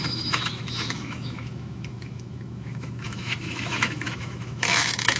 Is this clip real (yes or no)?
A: no